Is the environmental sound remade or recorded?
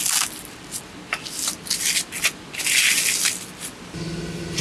recorded